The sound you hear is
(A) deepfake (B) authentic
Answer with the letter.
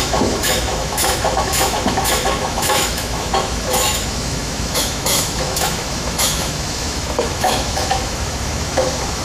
A